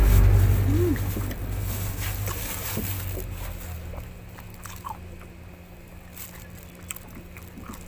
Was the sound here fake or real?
real